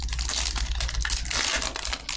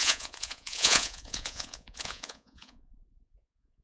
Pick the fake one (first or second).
second